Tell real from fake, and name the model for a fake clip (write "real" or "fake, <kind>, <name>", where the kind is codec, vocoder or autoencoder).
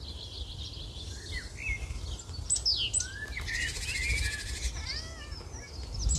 real